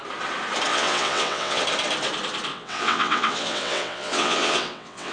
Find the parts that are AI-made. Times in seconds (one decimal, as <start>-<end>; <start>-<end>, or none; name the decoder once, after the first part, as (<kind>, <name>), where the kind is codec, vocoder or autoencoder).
0.7-1.6 (vocoder, WaveNeXt); 2.5-5.1